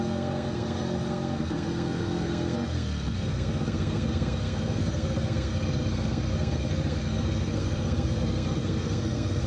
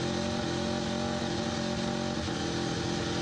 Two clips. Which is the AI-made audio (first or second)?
first